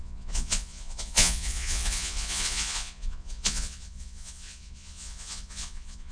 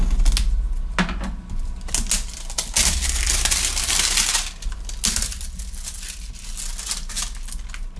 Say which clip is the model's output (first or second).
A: first